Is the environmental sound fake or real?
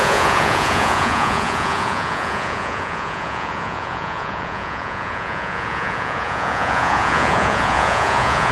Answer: fake